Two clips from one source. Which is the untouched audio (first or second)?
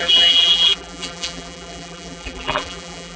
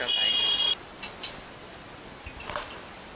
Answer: second